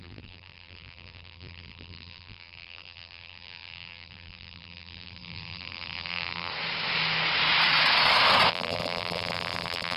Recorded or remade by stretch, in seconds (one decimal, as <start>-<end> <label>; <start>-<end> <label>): 0.0-6.5 remade; 6.5-8.5 recorded; 8.5-10.0 remade